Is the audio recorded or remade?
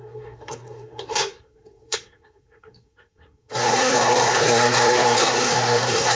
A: remade